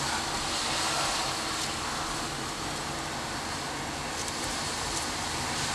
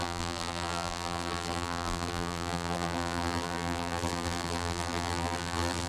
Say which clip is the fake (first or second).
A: second